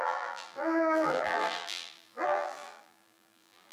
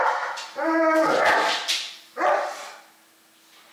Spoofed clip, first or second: first